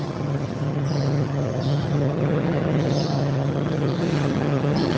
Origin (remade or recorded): remade